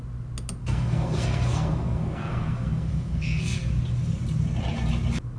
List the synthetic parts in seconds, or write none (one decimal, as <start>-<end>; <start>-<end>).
0.6-3.7